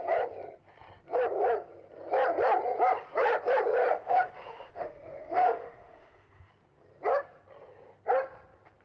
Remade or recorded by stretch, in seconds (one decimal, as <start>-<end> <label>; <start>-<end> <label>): 0.0-3.8 recorded; 3.8-6.5 remade; 6.5-8.8 recorded